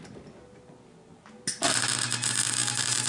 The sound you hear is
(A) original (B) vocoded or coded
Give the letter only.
A